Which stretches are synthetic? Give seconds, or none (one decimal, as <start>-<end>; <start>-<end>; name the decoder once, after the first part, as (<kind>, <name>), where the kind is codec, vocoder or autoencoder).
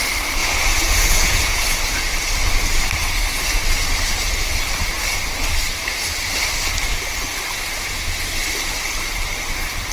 0.4-2.0 (vocoder, Vocos)